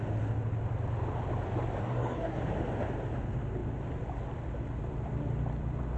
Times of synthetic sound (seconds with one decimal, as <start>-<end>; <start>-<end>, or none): 1.8-2.4